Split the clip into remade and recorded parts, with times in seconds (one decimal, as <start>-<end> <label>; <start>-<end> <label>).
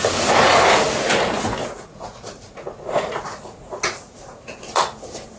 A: 0.0-1.6 recorded; 1.6-4.8 remade; 4.8-5.4 recorded